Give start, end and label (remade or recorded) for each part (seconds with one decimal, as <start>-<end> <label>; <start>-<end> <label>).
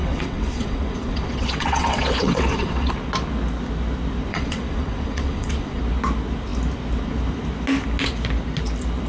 0.0-2.9 remade; 2.9-4.3 recorded; 4.3-5.8 remade; 5.8-9.1 recorded